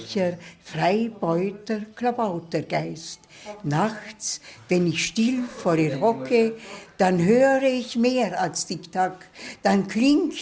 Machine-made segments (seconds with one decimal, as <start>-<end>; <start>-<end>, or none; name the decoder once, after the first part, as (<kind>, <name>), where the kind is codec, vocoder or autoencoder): 1.6-2.5 (vocoder, BigVGAN v2)